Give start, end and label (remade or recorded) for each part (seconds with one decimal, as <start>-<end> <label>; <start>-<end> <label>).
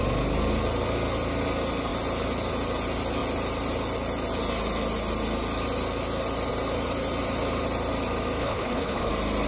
0.0-8.4 recorded; 8.4-9.1 remade; 9.1-9.5 recorded